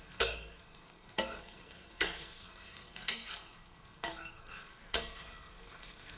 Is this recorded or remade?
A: remade